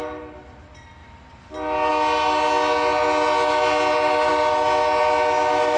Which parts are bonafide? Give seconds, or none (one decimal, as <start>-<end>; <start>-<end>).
0.0-5.8